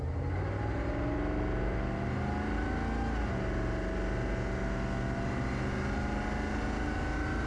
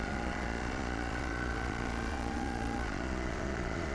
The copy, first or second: second